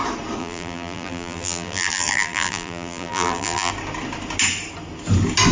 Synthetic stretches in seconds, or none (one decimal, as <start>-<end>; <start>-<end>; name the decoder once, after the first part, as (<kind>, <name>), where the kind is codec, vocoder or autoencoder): 0.4-3.7 (vocoder, BigVGAN v2)